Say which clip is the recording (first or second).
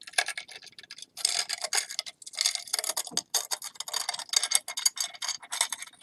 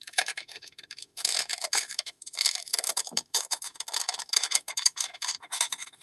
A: first